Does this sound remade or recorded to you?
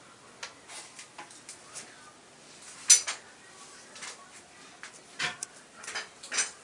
recorded